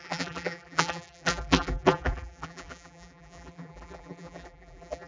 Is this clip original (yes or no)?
no